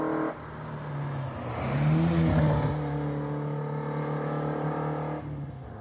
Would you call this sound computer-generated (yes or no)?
no